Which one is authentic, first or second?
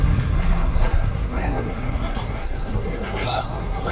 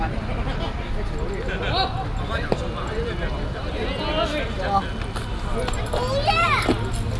second